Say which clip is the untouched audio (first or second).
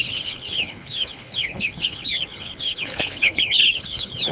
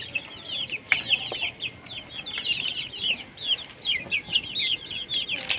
second